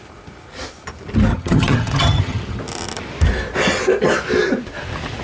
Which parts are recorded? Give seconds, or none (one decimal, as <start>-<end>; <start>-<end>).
0.0-1.3; 2.6-5.2